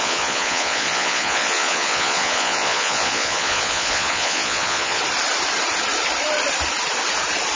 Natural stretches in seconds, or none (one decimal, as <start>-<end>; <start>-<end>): 5.0-7.6